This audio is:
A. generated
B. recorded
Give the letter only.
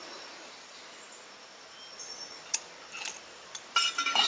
B